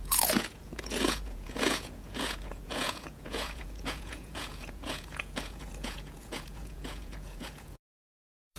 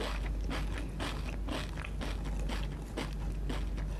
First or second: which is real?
second